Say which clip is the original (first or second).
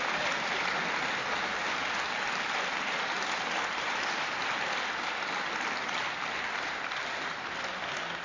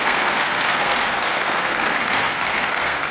first